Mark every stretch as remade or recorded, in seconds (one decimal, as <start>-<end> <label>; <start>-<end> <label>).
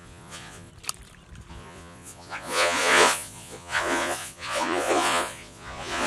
0.0-0.7 remade; 0.7-1.5 recorded; 1.5-6.1 remade